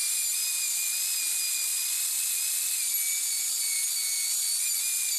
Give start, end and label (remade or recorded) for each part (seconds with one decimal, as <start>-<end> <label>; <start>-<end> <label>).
0.0-5.2 recorded